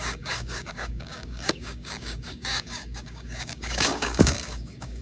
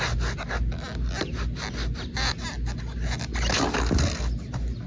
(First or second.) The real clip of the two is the second